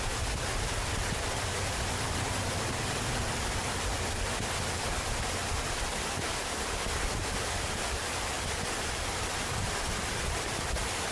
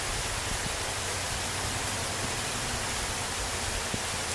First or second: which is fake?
first